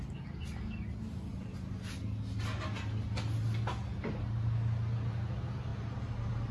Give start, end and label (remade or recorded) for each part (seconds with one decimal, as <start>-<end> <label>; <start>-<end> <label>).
0.0-6.5 recorded